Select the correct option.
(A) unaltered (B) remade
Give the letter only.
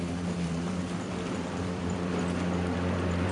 B